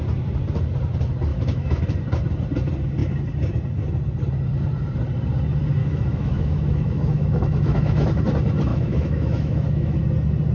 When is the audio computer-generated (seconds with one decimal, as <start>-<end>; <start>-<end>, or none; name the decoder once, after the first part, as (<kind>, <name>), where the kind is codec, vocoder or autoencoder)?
1.3-1.8 (autoencoder, DAC-VAE); 5.8-8.2; 8.7-10.0